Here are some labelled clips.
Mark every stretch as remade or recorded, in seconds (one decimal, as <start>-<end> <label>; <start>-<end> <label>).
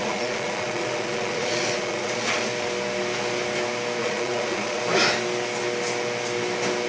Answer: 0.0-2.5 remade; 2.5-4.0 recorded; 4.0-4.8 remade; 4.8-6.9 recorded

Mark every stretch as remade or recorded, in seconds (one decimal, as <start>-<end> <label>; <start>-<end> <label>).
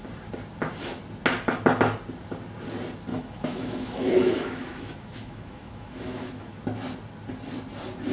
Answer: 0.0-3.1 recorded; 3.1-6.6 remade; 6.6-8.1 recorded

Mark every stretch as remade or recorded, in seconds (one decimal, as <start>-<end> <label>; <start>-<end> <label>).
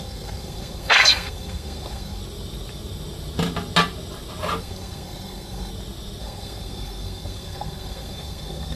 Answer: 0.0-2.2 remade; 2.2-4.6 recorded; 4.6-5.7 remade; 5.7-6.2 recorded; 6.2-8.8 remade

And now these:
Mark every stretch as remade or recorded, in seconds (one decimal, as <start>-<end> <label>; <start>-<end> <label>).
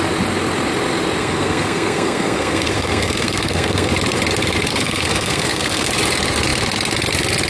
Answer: 0.0-1.2 recorded; 1.2-3.9 remade; 3.9-4.7 recorded; 4.7-5.9 remade; 5.9-7.5 recorded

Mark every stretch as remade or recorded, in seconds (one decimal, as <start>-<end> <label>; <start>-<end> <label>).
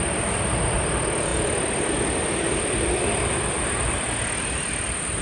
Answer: 0.0-5.2 recorded